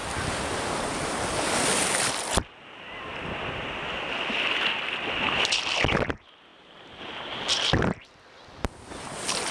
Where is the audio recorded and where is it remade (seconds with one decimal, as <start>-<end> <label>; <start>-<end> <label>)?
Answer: 0.0-9.5 recorded